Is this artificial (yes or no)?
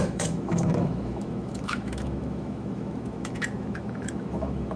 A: yes